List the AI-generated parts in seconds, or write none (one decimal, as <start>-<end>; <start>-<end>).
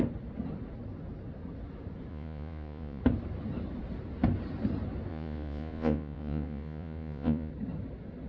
2.1-3.0; 5.1-7.5